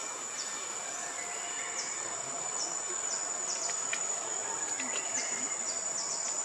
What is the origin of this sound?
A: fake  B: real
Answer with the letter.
B